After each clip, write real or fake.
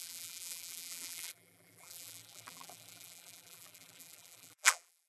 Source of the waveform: fake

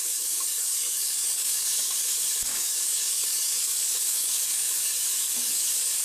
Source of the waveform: fake